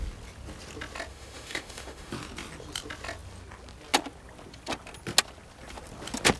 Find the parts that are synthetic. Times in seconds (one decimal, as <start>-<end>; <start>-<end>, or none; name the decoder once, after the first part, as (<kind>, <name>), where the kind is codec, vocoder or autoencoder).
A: 1.1-2.1 (autoencoder, DAC-VAE)